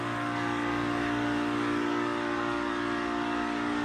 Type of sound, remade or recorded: remade